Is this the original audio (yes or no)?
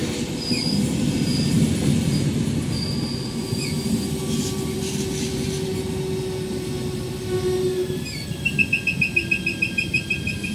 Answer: yes